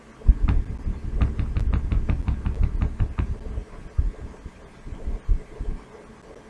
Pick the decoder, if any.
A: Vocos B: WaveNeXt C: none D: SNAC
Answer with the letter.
C